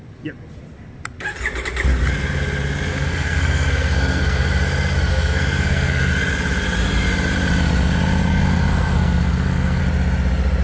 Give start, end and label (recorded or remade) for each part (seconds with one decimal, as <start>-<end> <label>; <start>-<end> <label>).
0.0-2.9 recorded; 2.9-4.5 remade; 4.5-5.1 recorded; 5.1-6.1 remade; 6.1-8.3 recorded; 8.3-9.8 remade; 9.8-10.6 recorded